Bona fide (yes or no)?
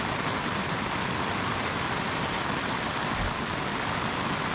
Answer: yes